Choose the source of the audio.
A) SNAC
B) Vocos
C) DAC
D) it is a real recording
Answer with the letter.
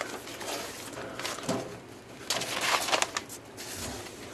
D